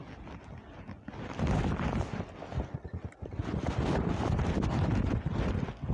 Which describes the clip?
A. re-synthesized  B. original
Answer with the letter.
B